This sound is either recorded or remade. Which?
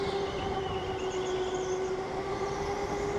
recorded